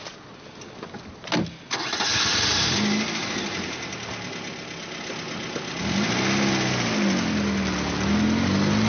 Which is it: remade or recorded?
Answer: recorded